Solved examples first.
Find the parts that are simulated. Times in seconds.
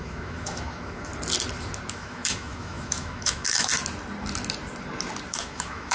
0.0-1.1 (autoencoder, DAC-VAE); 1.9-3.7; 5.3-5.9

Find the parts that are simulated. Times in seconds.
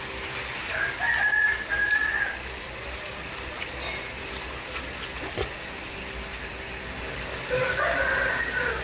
none